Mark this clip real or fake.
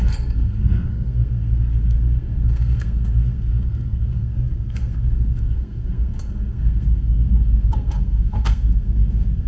fake